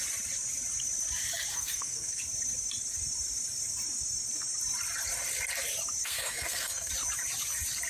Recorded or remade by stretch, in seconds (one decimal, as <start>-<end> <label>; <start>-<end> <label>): 0.0-1.5 recorded; 1.5-2.2 remade; 2.2-6.0 recorded; 6.0-6.9 remade; 6.9-7.9 recorded